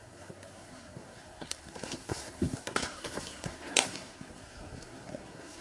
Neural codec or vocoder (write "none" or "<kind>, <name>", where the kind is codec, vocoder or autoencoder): codec, SNAC